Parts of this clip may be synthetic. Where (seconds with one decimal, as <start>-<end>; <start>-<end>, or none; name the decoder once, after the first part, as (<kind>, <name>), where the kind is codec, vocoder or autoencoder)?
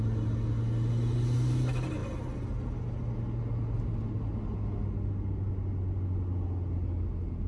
none